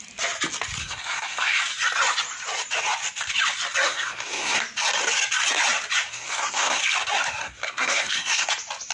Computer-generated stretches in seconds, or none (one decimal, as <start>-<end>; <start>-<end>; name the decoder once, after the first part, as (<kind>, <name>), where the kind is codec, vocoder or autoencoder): 0.8-1.6 (codec, SNAC); 3.9-4.6; 6.1-6.8; 7.4-8.5